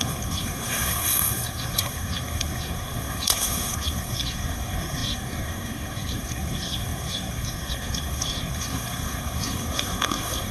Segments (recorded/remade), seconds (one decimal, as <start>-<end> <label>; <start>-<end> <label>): 0.0-10.5 remade